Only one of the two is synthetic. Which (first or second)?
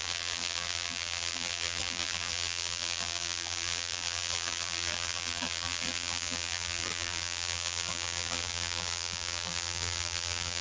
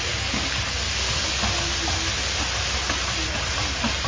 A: first